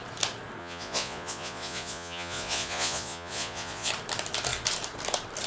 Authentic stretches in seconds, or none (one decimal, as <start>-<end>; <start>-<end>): 0.0-0.6; 3.9-5.5